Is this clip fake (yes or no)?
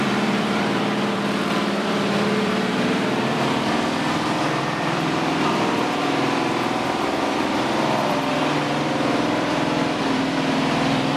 yes